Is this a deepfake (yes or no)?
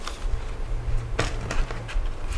no